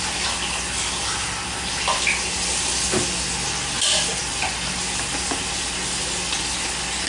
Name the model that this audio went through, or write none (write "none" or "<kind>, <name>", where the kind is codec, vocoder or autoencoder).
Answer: none